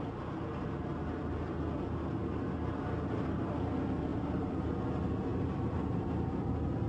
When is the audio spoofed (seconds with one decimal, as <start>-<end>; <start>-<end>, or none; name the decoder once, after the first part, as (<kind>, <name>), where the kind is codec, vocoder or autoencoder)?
4.1-4.6 (vocoder, BigVGAN v2); 5.3-6.5